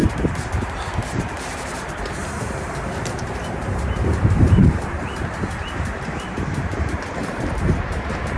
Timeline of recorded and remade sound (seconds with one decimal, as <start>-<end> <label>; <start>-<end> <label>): 0.0-8.4 remade